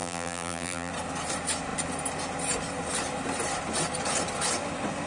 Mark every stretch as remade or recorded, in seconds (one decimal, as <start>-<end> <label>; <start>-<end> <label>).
0.0-0.9 remade; 0.9-5.1 recorded